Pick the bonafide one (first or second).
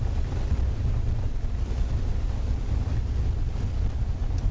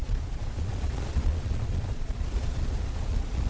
first